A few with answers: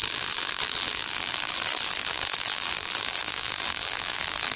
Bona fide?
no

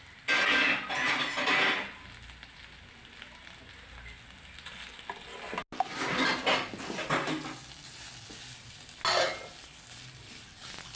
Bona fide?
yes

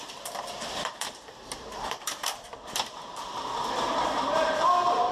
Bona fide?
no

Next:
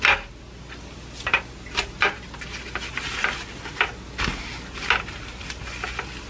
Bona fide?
yes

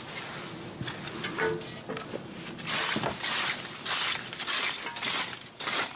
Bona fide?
yes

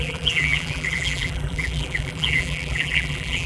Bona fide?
no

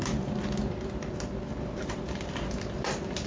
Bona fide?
yes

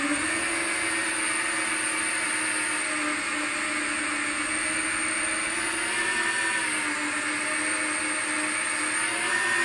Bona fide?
yes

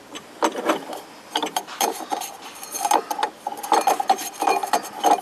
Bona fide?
no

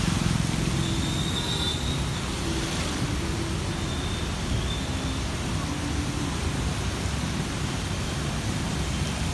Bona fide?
yes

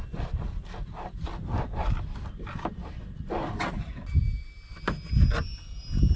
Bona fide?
yes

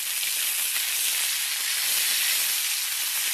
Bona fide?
yes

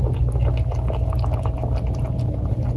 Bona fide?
yes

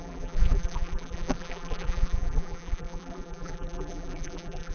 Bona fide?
no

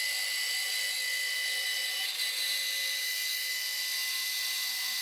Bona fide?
yes